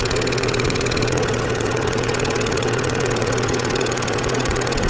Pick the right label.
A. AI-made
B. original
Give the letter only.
A